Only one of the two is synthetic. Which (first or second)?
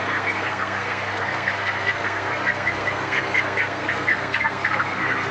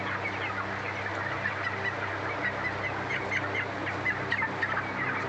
first